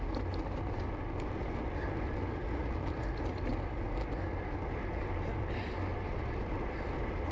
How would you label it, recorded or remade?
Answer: recorded